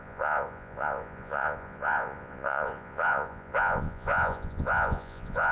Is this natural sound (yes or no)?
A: no